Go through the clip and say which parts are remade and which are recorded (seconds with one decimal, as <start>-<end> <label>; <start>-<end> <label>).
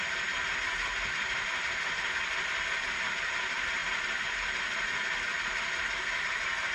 0.0-6.7 recorded